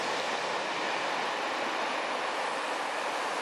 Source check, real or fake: real